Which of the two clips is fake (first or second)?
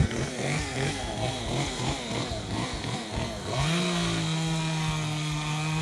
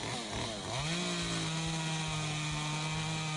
first